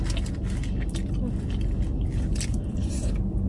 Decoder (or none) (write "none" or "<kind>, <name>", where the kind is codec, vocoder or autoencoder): none